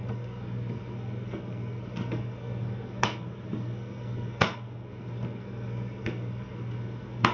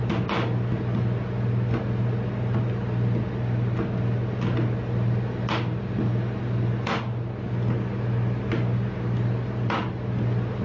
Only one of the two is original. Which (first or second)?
second